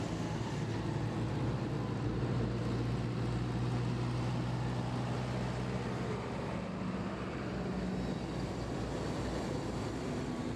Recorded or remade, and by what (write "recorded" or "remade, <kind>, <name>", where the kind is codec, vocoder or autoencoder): recorded